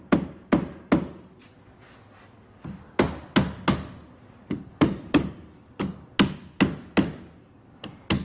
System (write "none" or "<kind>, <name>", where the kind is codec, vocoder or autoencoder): none